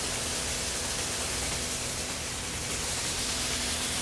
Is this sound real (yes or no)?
yes